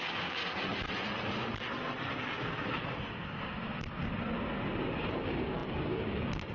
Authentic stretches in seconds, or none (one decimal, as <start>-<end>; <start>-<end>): 0.4-2.4; 4.0-5.0

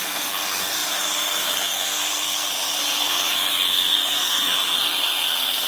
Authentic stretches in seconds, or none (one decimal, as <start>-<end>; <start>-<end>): none

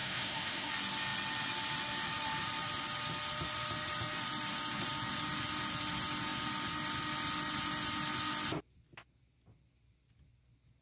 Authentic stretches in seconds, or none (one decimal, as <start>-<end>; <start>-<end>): 0.7-10.8